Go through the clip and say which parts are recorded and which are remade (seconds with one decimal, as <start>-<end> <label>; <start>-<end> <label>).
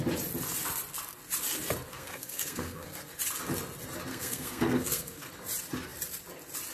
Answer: 0.0-1.9 recorded; 1.9-3.1 remade; 3.1-4.1 recorded; 4.1-5.3 remade; 5.3-6.7 recorded